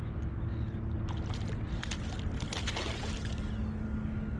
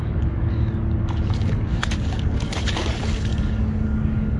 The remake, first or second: second